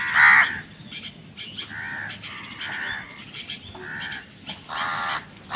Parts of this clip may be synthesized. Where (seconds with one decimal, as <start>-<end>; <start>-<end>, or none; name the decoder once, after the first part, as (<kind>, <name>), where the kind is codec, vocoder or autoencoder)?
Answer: none

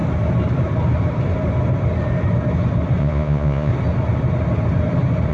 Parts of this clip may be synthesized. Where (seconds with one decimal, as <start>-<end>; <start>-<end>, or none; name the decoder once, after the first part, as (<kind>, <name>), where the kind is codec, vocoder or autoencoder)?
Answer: 3.0-3.7 (vocoder, Vocos)

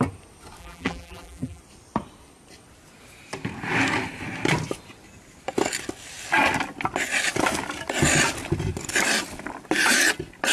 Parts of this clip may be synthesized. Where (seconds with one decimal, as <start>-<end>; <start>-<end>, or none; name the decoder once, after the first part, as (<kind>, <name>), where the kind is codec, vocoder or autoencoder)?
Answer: 0.6-1.6 (vocoder, BigVGAN v2)

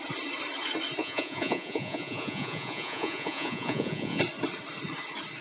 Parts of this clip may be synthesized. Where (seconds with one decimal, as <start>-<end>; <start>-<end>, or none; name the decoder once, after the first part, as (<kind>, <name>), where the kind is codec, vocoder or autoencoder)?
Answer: 1.0-4.2 (vocoder, Vocos)

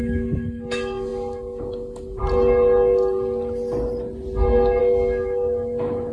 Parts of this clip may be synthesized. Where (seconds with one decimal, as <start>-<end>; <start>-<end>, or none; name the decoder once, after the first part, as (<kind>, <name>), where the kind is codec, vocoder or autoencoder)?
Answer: 0.0-2.2 (autoencoder, DAC-VAE); 4.8-6.1